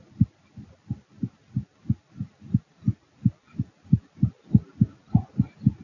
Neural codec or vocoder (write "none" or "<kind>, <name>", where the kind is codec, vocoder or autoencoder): none